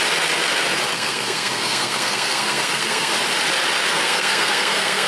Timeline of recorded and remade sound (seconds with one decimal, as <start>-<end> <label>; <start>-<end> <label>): 0.0-0.9 recorded; 0.9-3.1 remade; 3.1-3.9 recorded; 3.9-5.1 remade